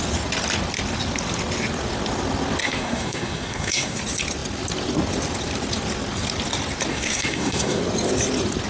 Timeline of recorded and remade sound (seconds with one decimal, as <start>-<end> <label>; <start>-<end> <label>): 0.0-2.6 recorded; 2.6-4.0 remade; 4.0-6.9 recorded; 6.9-7.8 remade; 7.8-8.7 recorded